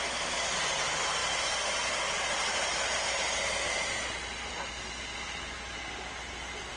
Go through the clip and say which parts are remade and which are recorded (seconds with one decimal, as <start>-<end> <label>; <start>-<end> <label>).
0.0-6.8 recorded